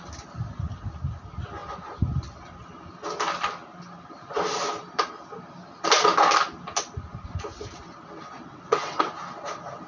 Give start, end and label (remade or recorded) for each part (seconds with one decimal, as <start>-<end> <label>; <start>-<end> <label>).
0.0-8.5 recorded; 8.5-9.1 remade; 9.1-9.9 recorded